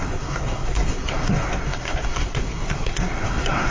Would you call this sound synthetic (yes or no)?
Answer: yes